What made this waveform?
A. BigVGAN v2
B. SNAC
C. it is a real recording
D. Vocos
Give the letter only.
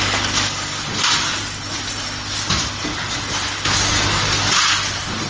C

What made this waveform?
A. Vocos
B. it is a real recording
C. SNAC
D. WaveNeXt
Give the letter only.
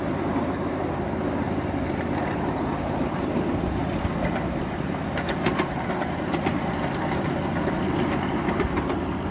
B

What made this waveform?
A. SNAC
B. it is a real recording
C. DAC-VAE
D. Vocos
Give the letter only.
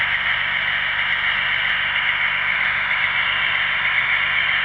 B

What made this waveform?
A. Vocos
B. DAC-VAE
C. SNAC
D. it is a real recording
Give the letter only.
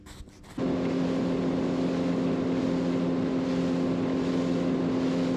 D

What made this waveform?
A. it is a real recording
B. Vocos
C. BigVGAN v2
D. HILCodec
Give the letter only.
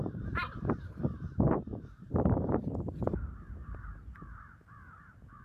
C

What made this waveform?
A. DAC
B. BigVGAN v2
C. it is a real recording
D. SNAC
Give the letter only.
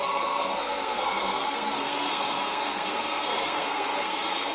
D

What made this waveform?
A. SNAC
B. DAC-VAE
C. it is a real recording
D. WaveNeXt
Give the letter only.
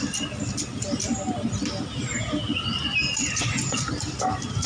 C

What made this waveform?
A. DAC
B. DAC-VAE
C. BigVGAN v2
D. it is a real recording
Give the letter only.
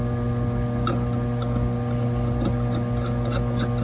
D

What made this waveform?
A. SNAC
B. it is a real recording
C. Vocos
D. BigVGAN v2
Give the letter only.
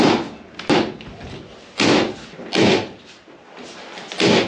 B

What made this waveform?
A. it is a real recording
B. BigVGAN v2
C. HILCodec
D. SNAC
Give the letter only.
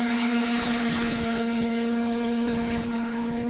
C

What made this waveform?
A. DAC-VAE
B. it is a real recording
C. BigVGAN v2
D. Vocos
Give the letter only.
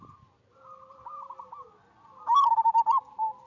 B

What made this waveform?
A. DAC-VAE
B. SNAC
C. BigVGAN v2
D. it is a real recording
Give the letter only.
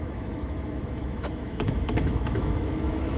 A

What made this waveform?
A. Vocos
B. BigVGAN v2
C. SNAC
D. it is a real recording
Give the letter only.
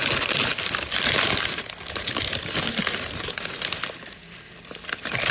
D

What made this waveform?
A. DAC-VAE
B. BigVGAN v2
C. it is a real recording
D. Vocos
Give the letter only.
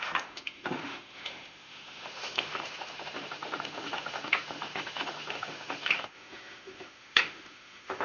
A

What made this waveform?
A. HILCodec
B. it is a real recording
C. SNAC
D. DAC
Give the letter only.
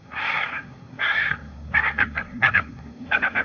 C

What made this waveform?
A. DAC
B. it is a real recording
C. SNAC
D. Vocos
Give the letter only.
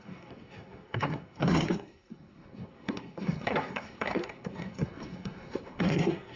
C